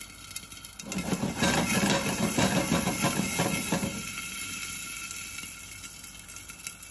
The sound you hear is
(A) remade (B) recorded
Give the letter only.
B